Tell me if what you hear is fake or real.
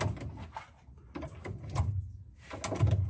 real